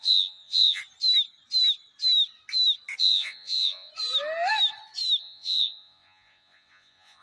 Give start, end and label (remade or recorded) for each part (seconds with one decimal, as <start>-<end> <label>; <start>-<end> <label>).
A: 0.0-0.8 remade; 0.8-3.0 recorded; 3.0-3.9 remade; 3.9-5.2 recorded; 5.2-7.2 remade